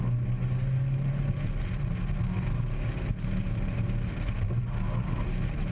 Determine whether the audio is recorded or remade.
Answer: recorded